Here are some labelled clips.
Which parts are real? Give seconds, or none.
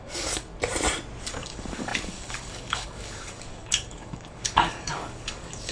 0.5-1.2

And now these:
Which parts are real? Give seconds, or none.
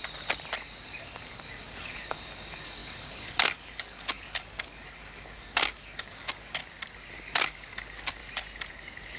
0.0-1.0; 6.6-7.1; 8.2-8.7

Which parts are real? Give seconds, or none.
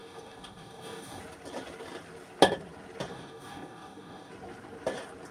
1.2-3.1; 4.3-5.3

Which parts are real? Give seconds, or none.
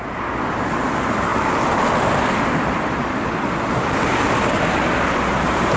0.0-5.8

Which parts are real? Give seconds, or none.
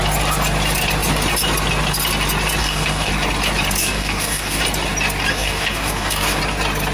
0.0-2.6; 3.1-3.8; 4.6-5.3; 6.4-6.9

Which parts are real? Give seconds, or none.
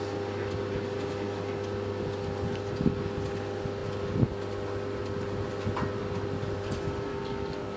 0.0-7.1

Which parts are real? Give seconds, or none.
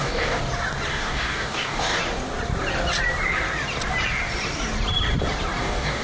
0.4-0.9; 2.0-5.6